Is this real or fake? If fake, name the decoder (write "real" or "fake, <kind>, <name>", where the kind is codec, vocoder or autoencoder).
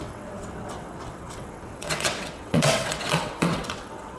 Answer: fake, vocoder, WaveNeXt